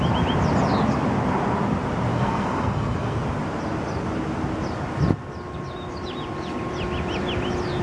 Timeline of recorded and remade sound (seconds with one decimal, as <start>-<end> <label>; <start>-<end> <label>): 0.0-2.1 recorded; 2.1-3.2 remade; 3.2-7.8 recorded